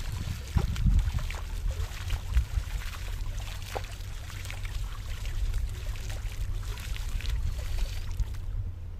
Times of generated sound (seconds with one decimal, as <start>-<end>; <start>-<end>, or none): 2.1-5.9; 6.7-8.3

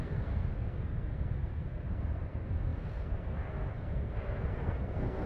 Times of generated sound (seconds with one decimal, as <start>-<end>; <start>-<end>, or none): 0.0-5.3

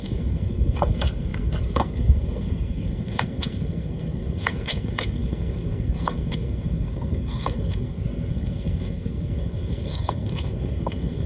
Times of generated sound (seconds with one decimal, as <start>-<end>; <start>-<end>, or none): 0.0-11.3

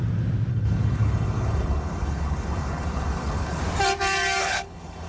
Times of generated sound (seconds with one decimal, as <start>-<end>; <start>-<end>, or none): 0.5-3.6; 4.4-5.1

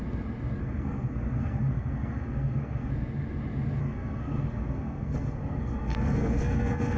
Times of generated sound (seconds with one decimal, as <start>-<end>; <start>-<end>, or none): 0.6-2.9; 3.8-7.0

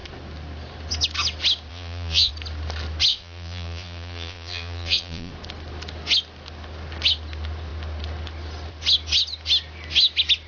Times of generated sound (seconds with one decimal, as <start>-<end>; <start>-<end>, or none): 1.7-2.3; 3.1-5.3

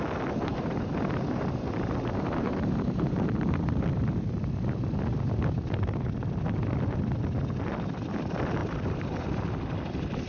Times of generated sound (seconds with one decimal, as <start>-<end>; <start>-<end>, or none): 0.5-4.0; 5.1-6.1; 8.6-9.3

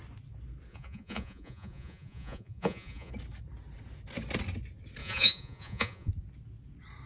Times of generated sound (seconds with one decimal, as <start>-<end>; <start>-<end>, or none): 0.7-3.1; 5.0-6.1